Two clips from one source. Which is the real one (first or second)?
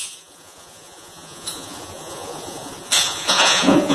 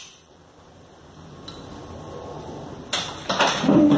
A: second